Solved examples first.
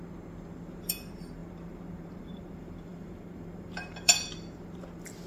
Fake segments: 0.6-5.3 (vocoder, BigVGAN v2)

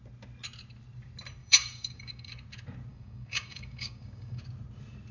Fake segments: 1.4-2.3 (codec, DAC); 2.9-4.4